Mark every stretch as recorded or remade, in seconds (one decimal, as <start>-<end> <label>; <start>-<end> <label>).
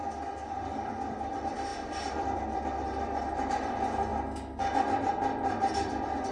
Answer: 0.0-0.5 recorded; 0.5-4.1 remade; 4.1-4.8 recorded; 4.8-6.3 remade